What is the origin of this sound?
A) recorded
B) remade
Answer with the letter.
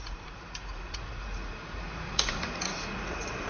B